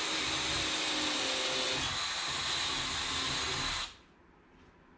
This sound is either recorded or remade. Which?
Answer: recorded